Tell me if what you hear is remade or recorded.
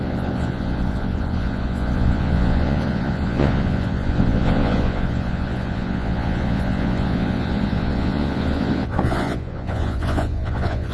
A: remade